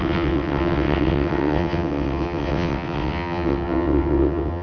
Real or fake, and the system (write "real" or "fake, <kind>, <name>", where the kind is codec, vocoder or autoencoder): fake, vocoder, WaveNeXt